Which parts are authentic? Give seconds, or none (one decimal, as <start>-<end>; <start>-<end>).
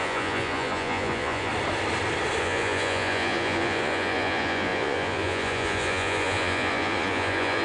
1.5-2.4